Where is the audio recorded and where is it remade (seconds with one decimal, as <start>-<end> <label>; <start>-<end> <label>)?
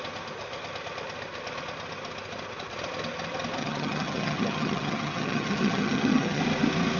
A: 0.0-3.6 recorded; 3.6-6.4 remade; 6.4-7.0 recorded